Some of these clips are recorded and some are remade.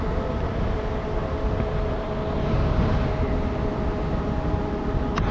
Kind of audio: recorded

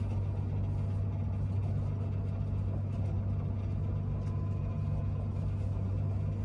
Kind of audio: recorded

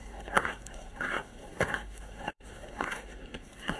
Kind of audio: remade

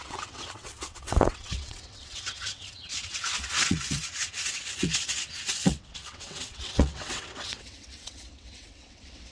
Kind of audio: remade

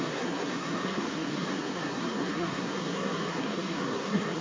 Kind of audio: remade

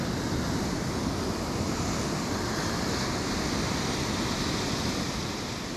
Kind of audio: recorded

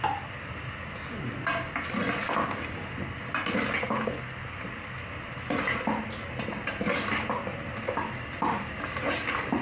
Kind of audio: recorded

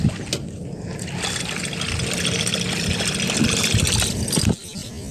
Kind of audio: recorded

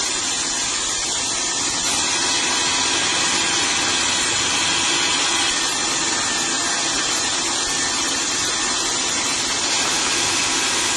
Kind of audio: recorded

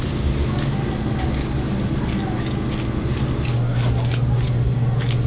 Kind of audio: recorded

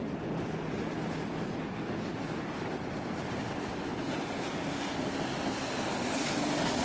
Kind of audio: recorded